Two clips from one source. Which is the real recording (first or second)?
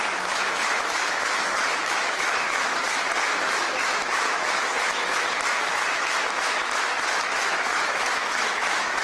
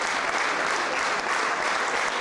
second